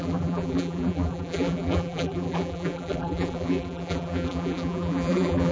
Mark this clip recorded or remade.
remade